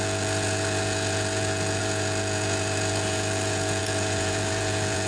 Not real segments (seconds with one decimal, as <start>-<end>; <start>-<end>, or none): 0.0-5.1